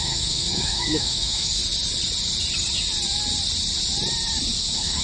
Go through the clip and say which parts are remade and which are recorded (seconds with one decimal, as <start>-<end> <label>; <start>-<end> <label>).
0.0-1.6 remade; 1.6-4.6 recorded; 4.6-5.0 remade